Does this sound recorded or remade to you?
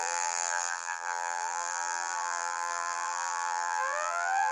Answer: remade